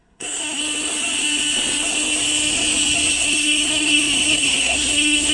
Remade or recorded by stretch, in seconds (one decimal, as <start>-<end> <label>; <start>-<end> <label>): 0.0-0.6 remade; 0.6-3.1 recorded; 3.1-5.3 remade